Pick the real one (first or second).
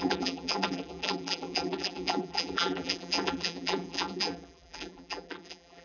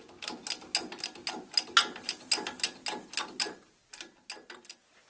second